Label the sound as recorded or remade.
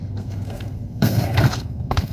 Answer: remade